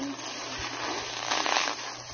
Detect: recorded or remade recorded